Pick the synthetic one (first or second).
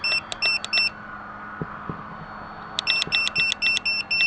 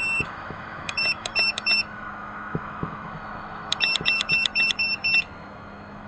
second